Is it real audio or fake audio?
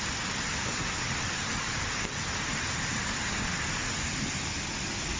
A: real